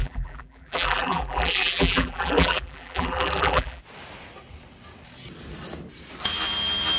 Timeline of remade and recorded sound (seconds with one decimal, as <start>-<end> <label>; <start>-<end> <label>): 0.0-3.8 remade; 3.8-7.0 recorded